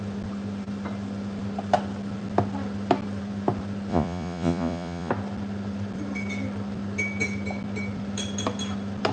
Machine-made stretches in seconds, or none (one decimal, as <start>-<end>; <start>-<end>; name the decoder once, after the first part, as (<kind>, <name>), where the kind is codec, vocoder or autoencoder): 3.9-5.1 (vocoder, Vocos)